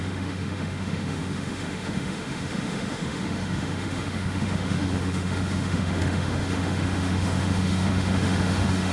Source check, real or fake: fake